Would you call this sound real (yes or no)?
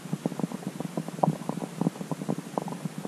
yes